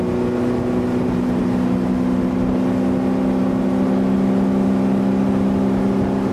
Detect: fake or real real